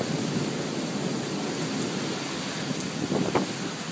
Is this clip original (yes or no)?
yes